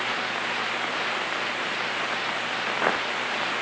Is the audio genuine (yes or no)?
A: yes